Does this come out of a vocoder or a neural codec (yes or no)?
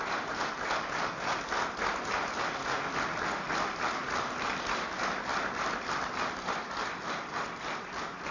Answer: no